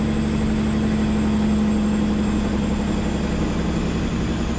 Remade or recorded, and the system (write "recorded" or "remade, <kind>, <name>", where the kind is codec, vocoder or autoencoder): recorded